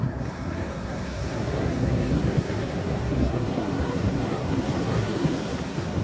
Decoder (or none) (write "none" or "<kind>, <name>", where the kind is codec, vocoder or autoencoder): codec, SNAC